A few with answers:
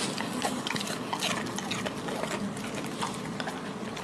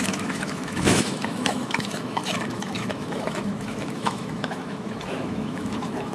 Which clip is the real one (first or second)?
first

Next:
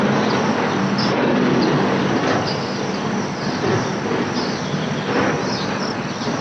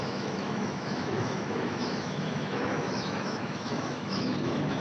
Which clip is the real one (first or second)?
first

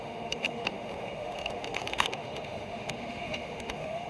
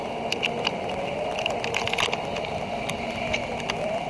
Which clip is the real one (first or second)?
second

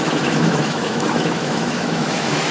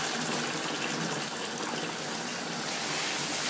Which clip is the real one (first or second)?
second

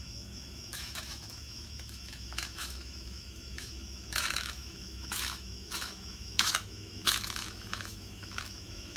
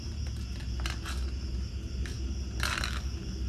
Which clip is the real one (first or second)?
second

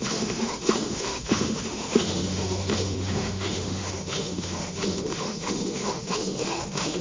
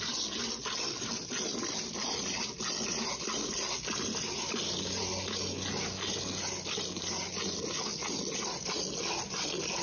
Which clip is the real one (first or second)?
second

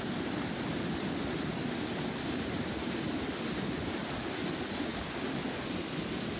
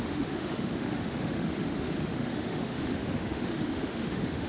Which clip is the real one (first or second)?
first